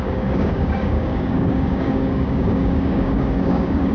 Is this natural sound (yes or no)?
no